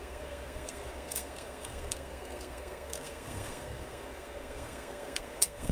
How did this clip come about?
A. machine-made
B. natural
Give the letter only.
A